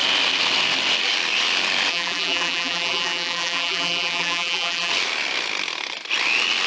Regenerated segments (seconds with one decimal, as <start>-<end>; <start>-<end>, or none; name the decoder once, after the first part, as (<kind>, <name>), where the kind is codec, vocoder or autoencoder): 1.9-4.9 (vocoder, BigVGAN v2)